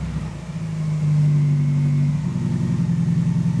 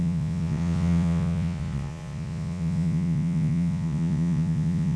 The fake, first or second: second